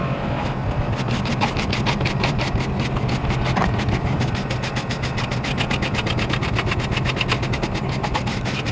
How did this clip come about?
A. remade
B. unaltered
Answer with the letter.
B